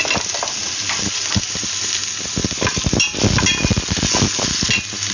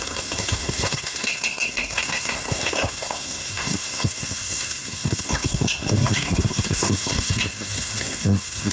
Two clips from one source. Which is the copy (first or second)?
second